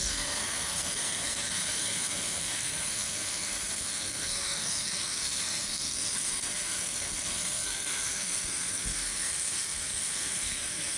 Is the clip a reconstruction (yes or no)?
yes